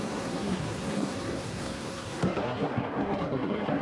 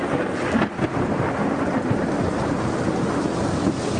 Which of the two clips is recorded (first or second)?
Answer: second